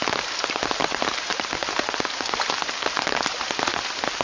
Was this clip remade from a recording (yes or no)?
no